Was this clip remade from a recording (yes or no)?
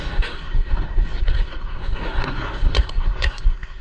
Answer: yes